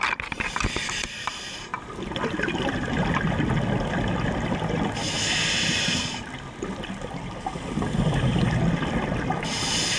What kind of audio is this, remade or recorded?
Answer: recorded